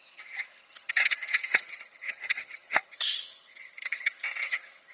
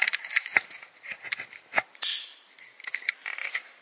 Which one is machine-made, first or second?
first